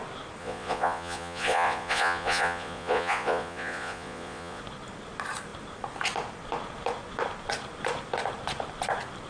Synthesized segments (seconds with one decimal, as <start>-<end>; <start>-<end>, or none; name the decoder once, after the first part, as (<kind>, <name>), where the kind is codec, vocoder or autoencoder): 0.4-4.6 (vocoder, Vocos)